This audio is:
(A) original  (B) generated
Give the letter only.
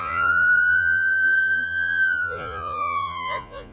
B